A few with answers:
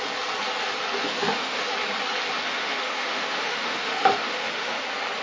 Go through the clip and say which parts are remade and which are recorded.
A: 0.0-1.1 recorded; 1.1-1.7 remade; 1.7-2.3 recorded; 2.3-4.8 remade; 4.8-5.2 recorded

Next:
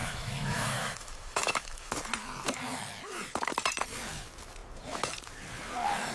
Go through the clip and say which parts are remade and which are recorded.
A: 0.0-1.9 remade; 1.9-6.1 recorded